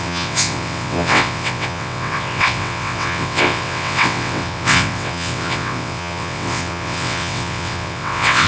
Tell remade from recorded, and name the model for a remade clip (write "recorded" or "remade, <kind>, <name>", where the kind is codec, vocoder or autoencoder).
remade, vocoder, WaveNeXt